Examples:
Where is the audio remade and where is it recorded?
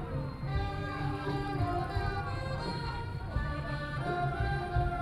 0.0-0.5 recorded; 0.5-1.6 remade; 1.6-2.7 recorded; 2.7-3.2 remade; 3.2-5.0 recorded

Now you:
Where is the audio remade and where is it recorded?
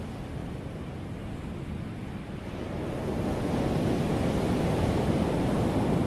0.0-6.1 recorded